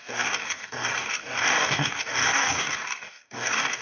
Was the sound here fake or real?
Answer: fake